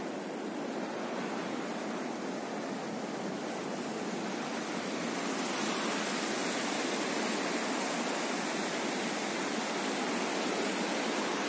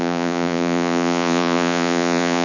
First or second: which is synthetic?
second